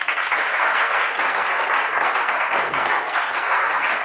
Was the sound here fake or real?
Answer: fake